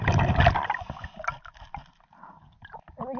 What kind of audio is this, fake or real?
real